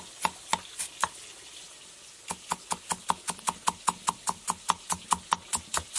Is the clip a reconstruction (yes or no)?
no